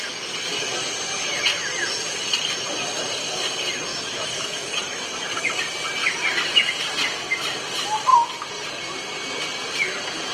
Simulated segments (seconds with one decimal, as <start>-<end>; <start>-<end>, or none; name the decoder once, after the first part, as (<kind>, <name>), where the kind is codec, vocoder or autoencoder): 3.9-5.0 (autoencoder, DAC-VAE)